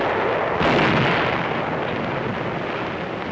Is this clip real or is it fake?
real